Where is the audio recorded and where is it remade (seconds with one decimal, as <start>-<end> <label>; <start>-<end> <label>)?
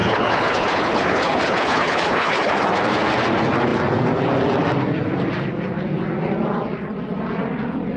0.0-2.5 remade; 2.5-8.0 recorded